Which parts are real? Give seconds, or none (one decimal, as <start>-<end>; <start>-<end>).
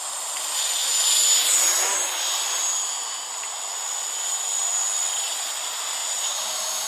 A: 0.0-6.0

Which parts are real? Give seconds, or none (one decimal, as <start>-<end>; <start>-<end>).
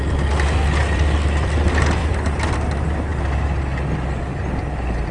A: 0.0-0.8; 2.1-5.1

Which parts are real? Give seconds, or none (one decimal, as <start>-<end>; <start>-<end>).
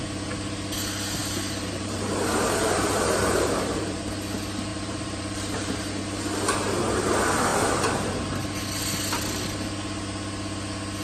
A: 0.0-1.2; 4.0-4.7; 5.9-7.5; 8.1-11.0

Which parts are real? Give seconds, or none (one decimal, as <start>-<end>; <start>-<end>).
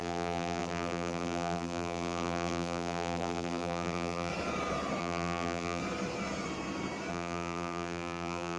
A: 4.3-5.0; 5.8-7.1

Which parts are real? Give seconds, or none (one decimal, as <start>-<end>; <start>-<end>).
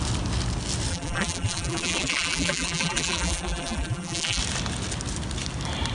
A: 0.0-0.9; 4.4-5.9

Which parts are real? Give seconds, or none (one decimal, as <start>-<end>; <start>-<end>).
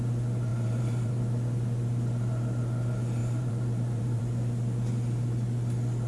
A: 0.0-0.5; 1.1-3.2; 4.2-6.1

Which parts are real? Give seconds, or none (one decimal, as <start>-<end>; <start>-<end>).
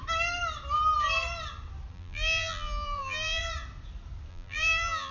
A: 0.0-1.9; 3.4-4.3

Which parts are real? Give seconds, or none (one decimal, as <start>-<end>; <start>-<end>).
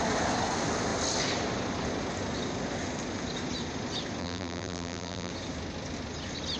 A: 0.0-4.2; 5.3-6.6